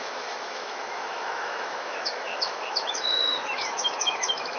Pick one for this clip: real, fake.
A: fake